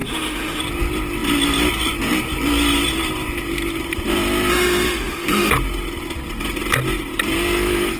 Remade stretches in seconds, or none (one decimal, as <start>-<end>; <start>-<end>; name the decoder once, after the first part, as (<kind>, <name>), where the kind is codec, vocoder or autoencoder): 0.0-0.6 (autoencoder, DAC-VAE); 4.5-5.5